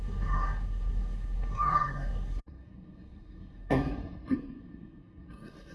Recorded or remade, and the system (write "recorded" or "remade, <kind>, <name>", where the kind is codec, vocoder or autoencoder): remade, codec, SNAC